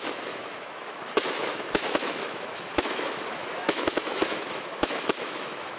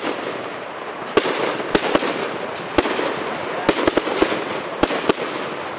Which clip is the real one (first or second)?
second